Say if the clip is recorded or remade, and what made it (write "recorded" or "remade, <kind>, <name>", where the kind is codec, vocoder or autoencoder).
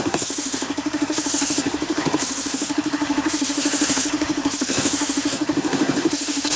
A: remade, codec, SNAC